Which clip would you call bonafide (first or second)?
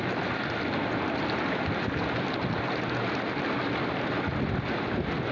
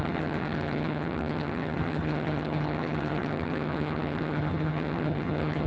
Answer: first